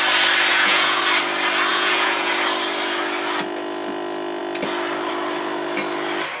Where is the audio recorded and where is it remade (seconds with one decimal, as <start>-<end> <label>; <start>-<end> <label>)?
0.0-0.5 recorded; 0.5-1.0 remade; 1.0-1.7 recorded; 1.7-2.3 remade; 2.3-6.4 recorded